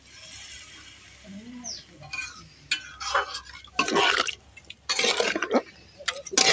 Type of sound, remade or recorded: recorded